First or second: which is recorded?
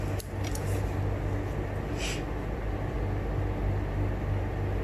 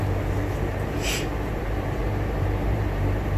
first